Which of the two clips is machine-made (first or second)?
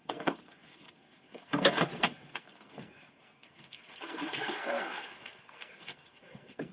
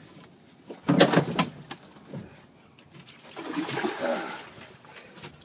first